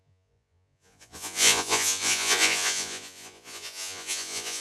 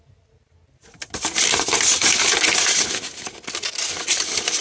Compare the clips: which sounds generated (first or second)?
first